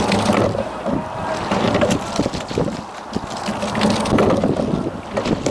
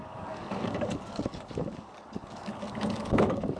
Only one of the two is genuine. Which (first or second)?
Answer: first